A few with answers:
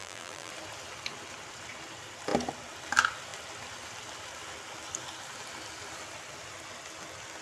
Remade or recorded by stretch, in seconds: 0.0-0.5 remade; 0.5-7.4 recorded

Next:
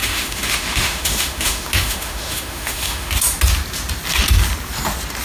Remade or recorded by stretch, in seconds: 0.0-3.1 remade; 3.1-5.2 recorded

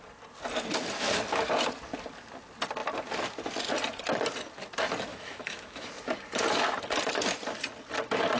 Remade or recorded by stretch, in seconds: 0.0-5.1 recorded; 5.1-5.9 remade; 5.9-8.4 recorded